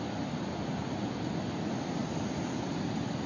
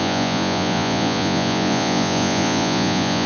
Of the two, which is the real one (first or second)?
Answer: first